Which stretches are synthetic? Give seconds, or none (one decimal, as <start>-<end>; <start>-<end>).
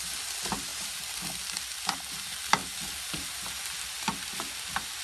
none